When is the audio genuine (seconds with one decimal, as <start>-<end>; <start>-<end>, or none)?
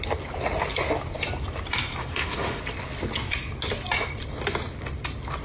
0.0-2.0; 2.6-5.4